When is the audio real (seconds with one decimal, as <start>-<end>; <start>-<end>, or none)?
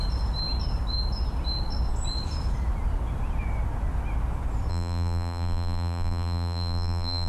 0.0-4.7